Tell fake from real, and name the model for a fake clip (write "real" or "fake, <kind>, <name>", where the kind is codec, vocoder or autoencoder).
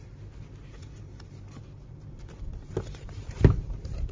fake, vocoder, BigVGAN v2